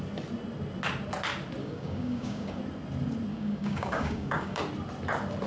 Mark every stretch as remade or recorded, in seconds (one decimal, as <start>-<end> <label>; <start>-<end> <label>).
0.0-1.6 recorded; 1.6-2.6 remade; 2.6-3.3 recorded; 3.3-4.6 remade; 4.6-5.5 recorded